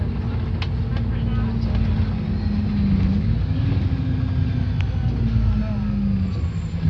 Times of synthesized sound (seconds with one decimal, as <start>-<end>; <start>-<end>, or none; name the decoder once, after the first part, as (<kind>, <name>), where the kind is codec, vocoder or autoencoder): none